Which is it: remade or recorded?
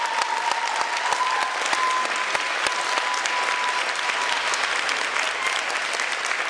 recorded